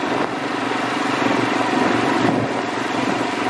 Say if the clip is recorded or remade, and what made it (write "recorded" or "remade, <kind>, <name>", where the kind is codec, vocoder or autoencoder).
recorded